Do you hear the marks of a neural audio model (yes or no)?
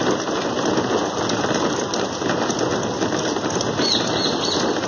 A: no